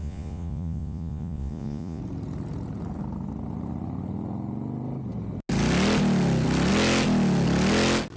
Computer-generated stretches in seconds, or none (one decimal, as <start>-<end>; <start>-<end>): 0.0-2.0